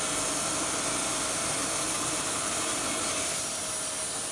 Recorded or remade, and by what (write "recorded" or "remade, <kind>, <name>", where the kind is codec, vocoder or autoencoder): recorded